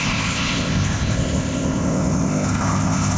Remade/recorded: remade